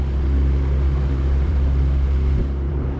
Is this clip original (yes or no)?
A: no